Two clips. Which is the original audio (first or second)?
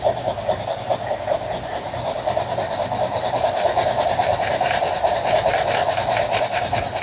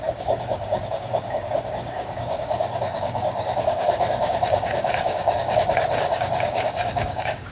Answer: first